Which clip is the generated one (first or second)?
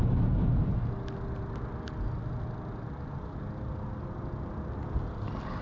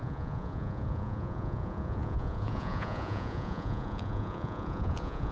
second